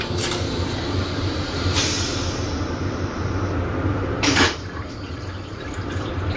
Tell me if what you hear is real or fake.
fake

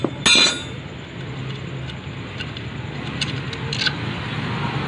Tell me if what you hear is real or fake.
real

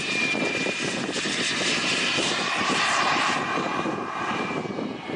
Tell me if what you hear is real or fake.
fake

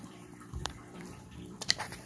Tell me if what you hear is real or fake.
fake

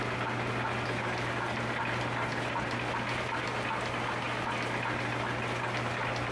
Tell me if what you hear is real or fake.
real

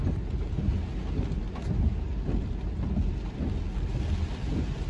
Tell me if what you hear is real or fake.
real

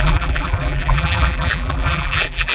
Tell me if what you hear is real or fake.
fake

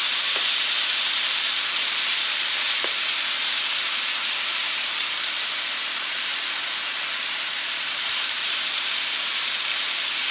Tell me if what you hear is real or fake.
fake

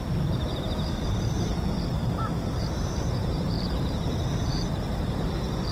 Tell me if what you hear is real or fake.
fake